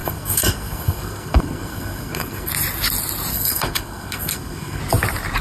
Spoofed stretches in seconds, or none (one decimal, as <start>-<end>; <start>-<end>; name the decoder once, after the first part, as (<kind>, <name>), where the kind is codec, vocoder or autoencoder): 0.0-2.5 (codec, SNAC); 3.3-4.8